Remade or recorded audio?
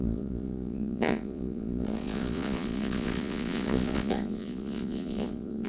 remade